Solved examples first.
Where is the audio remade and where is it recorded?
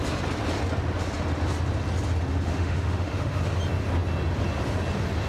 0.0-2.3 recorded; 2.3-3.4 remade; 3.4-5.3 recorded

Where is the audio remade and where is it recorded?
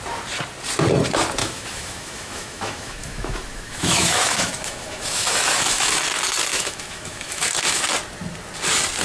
0.0-1.4 recorded; 1.4-6.0 remade; 6.0-6.5 recorded; 6.5-7.8 remade; 7.8-9.0 recorded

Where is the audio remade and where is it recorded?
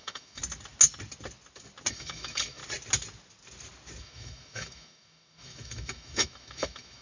0.0-0.4 remade; 0.4-1.9 recorded; 1.9-2.6 remade; 2.6-4.0 recorded; 4.0-7.0 remade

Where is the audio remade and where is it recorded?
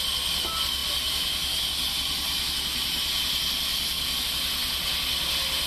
0.0-5.7 recorded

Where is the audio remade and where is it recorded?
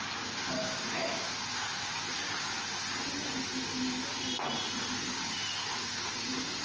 0.0-0.6 recorded; 0.6-1.3 remade; 1.3-5.6 recorded; 5.6-6.1 remade; 6.1-6.6 recorded